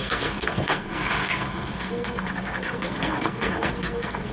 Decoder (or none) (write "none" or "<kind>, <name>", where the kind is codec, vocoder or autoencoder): codec, SNAC